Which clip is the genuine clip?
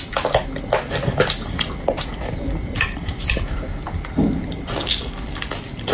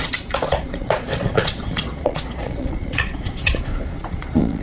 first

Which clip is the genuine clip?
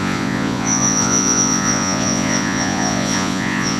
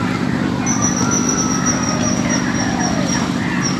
second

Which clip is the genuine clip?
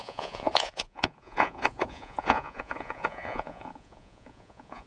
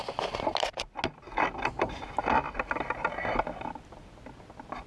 second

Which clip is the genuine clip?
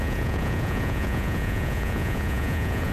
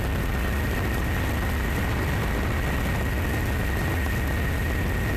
second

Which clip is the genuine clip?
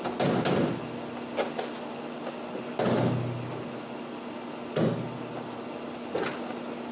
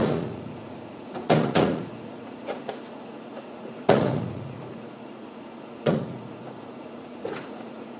first